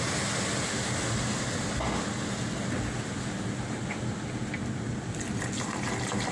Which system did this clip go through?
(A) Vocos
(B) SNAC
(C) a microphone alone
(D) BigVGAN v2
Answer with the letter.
C